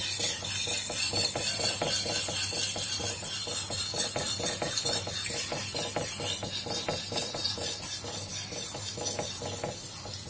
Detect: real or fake real